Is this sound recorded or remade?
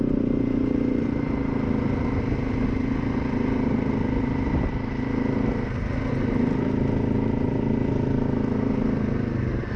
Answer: recorded